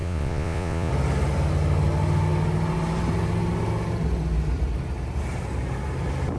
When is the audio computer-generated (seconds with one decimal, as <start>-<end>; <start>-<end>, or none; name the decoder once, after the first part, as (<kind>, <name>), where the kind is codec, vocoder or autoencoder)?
0.0-0.9 (vocoder, Vocos)